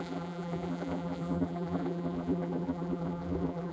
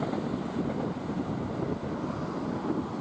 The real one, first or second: second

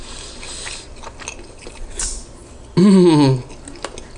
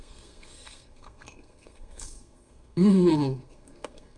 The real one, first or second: first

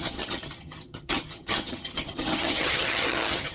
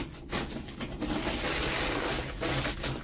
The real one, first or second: second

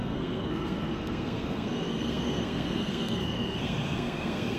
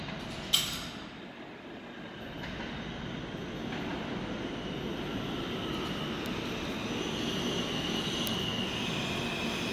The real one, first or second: second